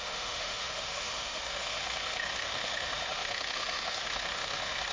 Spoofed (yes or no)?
yes